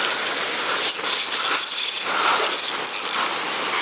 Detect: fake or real real